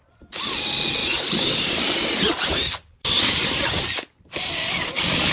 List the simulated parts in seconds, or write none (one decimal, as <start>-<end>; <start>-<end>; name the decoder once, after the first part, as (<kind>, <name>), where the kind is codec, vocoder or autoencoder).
1.0-4.2 (vocoder, BigVGAN v2)